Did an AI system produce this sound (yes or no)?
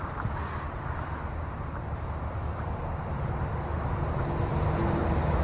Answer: no